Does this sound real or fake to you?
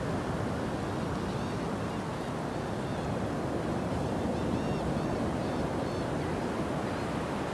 real